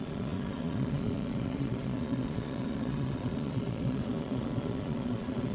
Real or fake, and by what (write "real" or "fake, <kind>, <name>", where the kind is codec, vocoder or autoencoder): fake, vocoder, Vocos